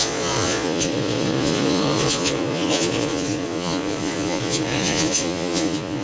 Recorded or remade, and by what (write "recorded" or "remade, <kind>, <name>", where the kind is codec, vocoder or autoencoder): remade, vocoder, Vocos